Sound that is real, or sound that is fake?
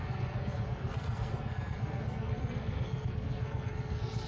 fake